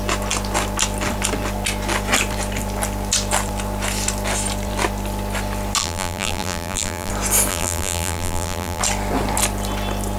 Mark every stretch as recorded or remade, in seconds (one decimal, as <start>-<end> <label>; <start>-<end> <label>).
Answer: 0.0-5.8 recorded; 5.8-7.1 remade; 7.1-7.5 recorded; 7.5-8.8 remade; 8.8-10.2 recorded